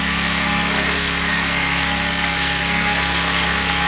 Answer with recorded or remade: remade